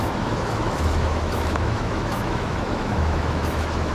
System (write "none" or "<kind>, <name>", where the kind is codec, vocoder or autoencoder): autoencoder, DAC-VAE